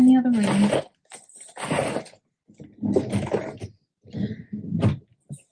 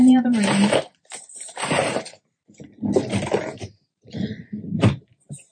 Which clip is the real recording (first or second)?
first